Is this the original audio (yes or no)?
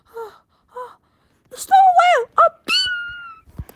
yes